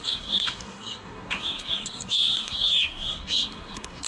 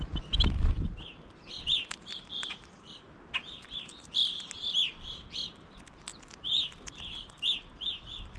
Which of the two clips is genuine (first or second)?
second